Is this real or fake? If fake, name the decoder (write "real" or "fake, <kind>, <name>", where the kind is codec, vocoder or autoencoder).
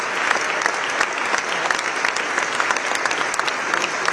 real